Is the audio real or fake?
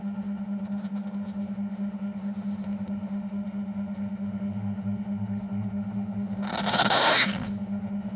fake